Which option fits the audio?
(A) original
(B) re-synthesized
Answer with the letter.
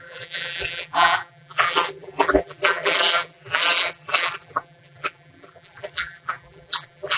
B